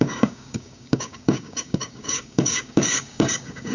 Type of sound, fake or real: fake